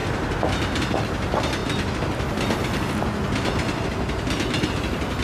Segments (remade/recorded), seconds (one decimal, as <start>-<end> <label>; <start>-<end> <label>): 0.0-5.2 recorded